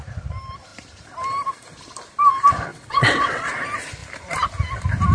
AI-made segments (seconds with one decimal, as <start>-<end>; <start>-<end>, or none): 2.7-3.5